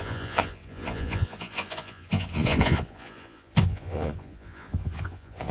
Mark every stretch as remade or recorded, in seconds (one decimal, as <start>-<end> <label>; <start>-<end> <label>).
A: 0.0-5.5 remade